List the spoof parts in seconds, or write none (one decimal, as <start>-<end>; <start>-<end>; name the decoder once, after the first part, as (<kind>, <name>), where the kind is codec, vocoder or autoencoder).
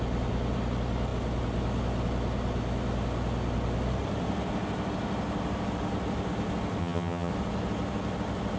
6.8-7.3 (vocoder, HiFi-GAN)